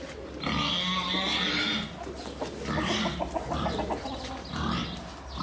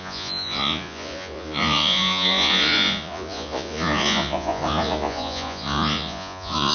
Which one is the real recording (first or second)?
first